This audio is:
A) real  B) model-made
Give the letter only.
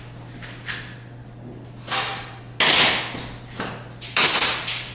A